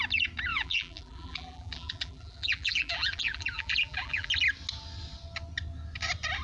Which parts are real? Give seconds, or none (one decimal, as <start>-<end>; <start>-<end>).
0.0-0.5; 4.3-6.4